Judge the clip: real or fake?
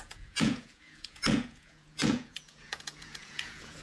fake